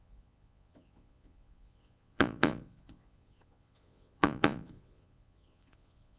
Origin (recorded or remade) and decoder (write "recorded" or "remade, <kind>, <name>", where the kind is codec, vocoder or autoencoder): remade, vocoder, Vocos